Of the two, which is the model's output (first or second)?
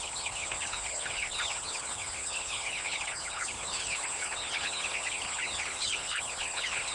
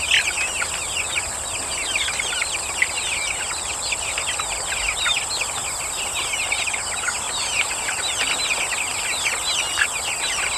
first